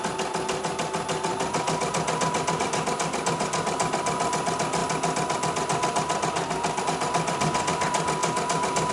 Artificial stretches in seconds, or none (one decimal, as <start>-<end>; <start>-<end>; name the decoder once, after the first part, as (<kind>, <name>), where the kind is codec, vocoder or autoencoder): none